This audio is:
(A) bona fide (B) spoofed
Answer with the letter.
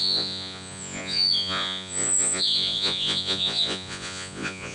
B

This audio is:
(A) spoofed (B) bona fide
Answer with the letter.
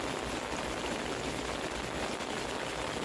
B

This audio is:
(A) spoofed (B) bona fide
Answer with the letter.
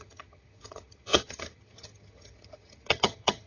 A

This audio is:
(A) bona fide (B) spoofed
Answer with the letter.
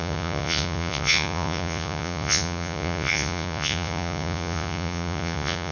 B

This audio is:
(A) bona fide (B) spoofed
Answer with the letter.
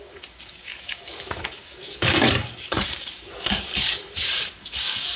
B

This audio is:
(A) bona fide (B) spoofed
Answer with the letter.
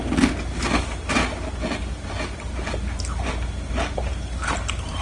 A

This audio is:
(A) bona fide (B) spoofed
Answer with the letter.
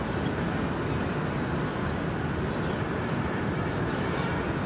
A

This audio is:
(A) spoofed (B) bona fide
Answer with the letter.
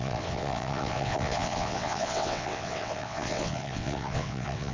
A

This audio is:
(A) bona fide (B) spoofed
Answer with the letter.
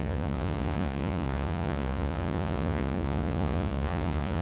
B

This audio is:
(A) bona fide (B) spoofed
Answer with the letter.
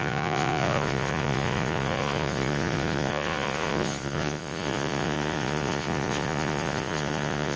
B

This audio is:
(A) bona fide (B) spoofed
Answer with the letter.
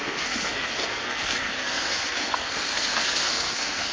B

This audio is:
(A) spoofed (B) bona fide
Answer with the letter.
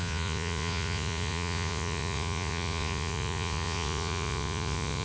A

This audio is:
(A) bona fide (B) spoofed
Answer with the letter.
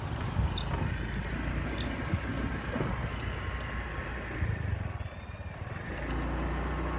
A